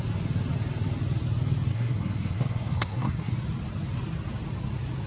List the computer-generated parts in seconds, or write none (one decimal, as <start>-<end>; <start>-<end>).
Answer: 1.7-3.3